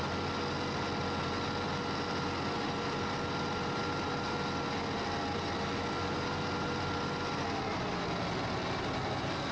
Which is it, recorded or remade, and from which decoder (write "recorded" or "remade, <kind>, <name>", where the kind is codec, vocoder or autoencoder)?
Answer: recorded